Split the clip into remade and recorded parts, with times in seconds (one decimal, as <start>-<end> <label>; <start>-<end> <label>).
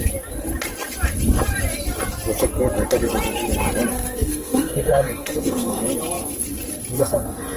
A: 0.0-3.9 recorded; 3.9-5.8 remade; 5.8-7.0 recorded; 7.0-7.6 remade